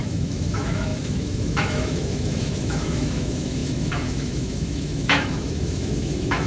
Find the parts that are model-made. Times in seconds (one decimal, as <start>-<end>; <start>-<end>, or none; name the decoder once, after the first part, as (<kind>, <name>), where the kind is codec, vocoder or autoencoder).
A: 0.0-6.5 (autoencoder, DAC-VAE)